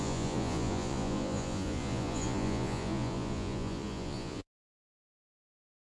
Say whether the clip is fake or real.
fake